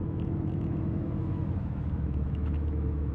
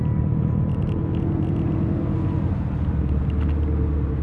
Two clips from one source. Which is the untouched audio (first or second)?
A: second